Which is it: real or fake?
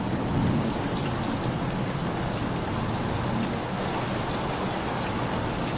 real